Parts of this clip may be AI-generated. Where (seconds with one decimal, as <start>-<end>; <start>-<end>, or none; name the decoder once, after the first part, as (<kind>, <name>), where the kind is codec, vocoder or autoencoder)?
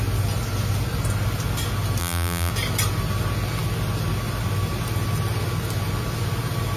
2.0-2.5 (vocoder, BigVGAN v2)